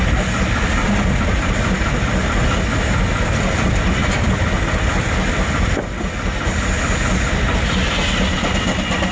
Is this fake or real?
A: real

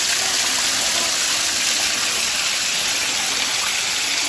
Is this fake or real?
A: real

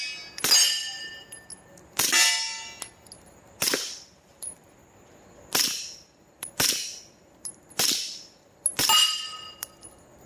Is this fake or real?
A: real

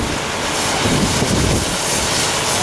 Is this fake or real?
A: real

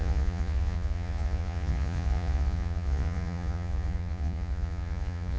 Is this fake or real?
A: fake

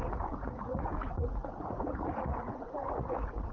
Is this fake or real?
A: fake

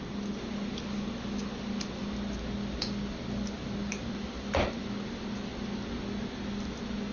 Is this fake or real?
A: real